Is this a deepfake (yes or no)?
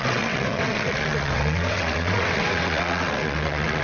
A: yes